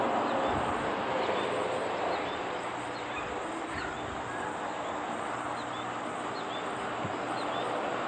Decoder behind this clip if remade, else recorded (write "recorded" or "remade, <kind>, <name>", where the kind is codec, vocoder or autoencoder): recorded